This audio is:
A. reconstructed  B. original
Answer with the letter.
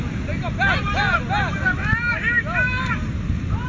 B